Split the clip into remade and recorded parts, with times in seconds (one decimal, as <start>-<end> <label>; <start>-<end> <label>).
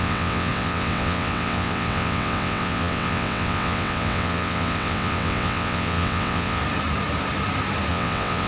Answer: 0.0-6.6 remade; 6.6-7.9 recorded; 7.9-8.5 remade